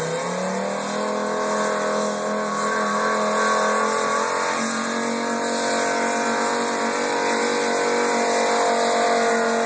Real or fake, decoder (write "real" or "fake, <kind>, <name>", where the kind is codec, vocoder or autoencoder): real